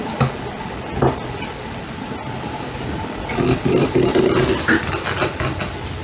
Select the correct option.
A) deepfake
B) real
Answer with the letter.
B